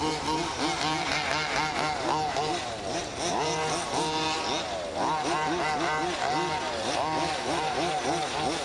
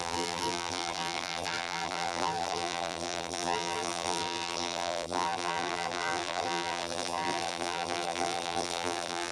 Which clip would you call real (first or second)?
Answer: first